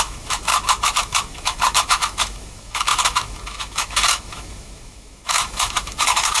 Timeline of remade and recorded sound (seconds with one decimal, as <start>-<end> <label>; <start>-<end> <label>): 0.0-6.4 remade